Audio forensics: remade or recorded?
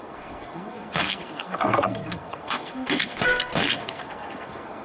remade